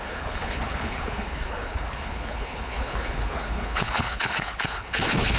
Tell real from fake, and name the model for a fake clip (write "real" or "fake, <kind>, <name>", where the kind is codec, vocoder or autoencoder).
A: fake, codec, HILCodec